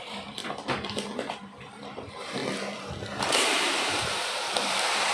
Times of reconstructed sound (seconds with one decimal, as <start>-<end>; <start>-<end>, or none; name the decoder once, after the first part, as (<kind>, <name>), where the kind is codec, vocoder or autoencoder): 0.0-0.4 (vocoder, BigVGAN v2); 1.3-2.4; 3.2-5.1